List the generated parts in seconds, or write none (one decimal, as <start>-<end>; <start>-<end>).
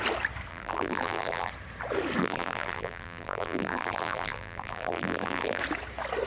0.5-1.5; 2.2-5.6